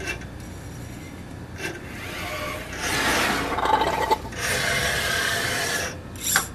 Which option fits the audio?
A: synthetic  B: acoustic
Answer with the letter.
B